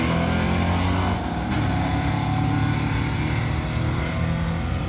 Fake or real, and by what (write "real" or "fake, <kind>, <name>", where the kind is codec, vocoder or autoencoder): real